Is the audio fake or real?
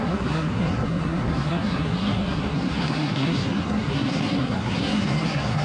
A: fake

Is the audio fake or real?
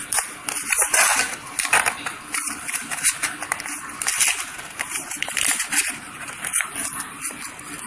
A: real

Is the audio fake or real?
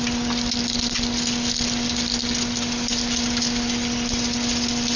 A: real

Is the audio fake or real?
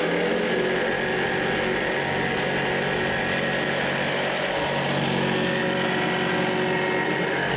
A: real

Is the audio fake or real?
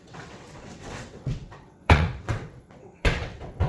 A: fake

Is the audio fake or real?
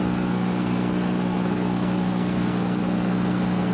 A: fake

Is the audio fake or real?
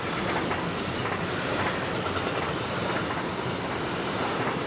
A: real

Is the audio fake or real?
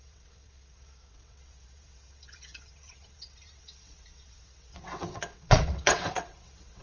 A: fake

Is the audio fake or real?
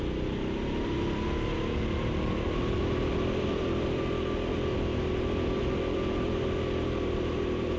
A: real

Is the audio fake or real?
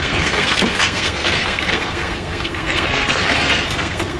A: fake